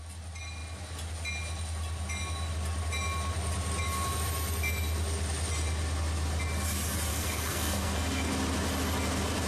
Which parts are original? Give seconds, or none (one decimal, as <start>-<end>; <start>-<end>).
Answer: 0.0-7.1; 8.3-9.5